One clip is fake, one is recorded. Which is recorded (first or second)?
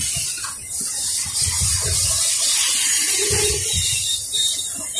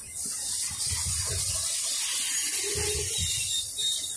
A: second